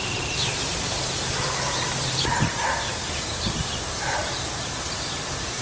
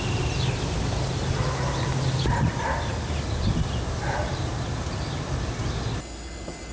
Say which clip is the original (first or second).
second